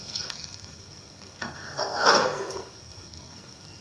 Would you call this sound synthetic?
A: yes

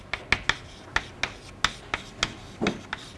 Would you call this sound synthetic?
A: no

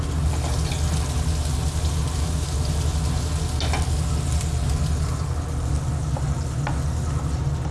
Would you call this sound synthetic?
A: no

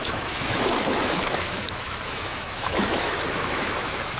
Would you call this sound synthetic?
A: yes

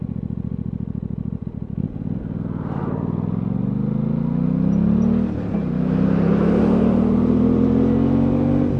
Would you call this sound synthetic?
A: no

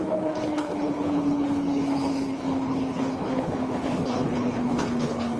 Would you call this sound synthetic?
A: yes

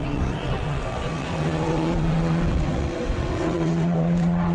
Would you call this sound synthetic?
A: yes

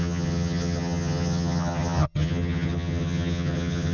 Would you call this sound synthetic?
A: yes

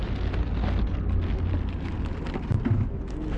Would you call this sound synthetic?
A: no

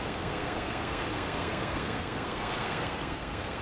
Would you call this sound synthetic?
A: yes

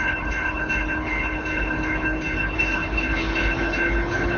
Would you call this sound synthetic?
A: yes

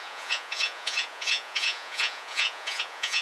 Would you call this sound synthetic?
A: yes